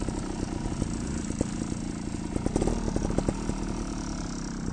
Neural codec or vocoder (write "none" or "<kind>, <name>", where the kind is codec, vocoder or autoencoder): none